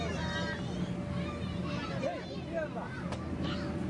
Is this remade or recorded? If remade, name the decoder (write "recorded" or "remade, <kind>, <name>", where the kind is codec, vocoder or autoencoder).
recorded